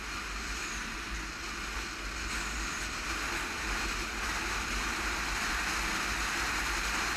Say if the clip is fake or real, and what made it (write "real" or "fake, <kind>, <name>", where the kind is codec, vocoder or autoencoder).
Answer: real